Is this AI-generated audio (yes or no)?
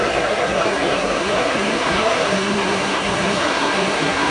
yes